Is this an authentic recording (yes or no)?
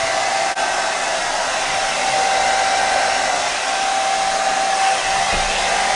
yes